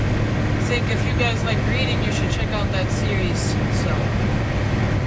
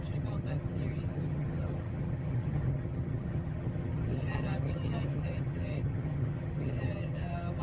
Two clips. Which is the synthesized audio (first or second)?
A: second